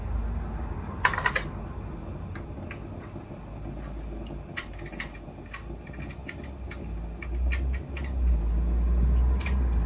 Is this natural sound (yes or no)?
yes